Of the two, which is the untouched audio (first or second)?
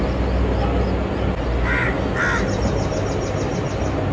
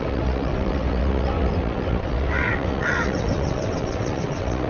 first